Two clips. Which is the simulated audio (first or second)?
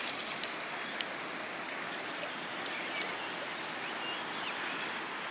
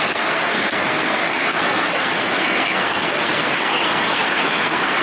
second